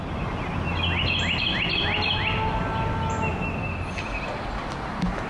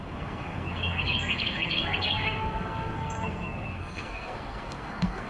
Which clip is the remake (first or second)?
second